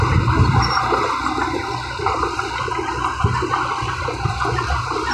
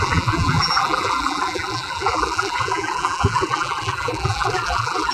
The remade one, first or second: second